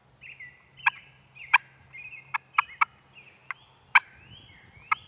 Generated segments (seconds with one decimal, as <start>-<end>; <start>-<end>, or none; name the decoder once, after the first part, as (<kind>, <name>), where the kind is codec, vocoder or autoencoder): none